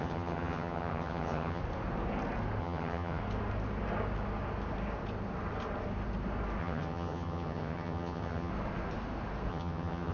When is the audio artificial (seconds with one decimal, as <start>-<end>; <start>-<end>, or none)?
0.0-1.6; 2.6-3.2; 6.6-8.5; 9.5-10.1